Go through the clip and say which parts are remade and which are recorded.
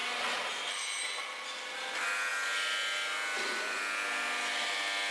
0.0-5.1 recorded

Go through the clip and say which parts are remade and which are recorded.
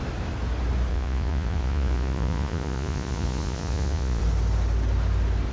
0.0-0.9 recorded; 0.9-4.2 remade; 4.2-5.5 recorded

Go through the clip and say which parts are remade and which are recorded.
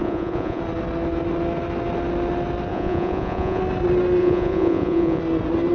0.0-0.6 remade; 0.6-2.7 recorded; 2.7-3.6 remade; 3.6-4.2 recorded; 4.2-5.2 remade; 5.2-5.7 recorded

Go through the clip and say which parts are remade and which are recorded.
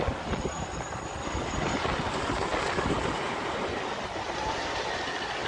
0.0-5.5 recorded